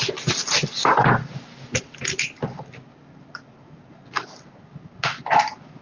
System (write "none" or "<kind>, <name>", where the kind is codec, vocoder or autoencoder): none